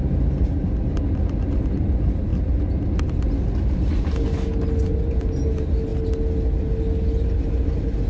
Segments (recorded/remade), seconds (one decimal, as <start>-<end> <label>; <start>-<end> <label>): 0.0-8.1 recorded